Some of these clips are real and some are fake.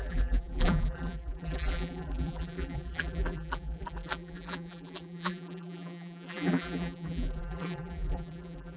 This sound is fake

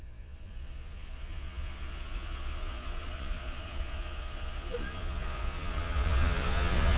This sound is fake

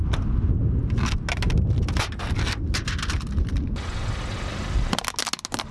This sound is real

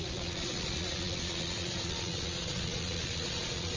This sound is fake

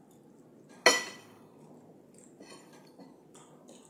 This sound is real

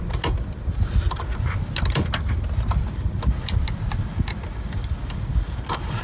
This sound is real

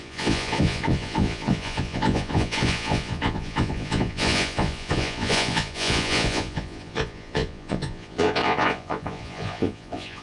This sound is fake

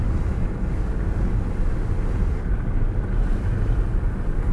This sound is real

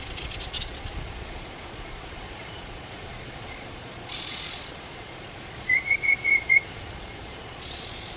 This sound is fake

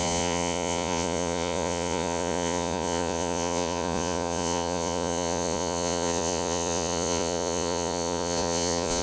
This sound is fake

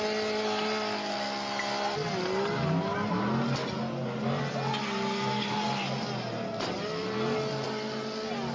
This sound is real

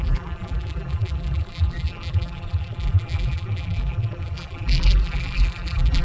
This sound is fake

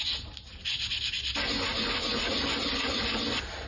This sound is real